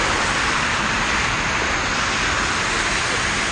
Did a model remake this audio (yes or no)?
no